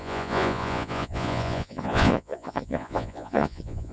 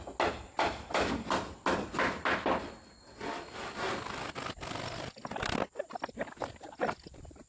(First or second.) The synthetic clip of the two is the first